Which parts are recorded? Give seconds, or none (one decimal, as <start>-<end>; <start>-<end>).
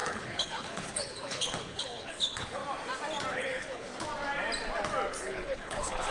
2.6-3.3; 3.9-5.2